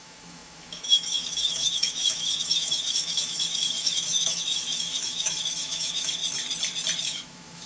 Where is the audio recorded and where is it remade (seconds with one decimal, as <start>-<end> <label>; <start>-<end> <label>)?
0.0-6.2 remade; 6.2-7.0 recorded; 7.0-7.7 remade